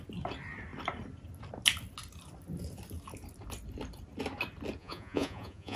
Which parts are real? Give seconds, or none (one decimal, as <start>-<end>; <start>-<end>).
0.0-4.8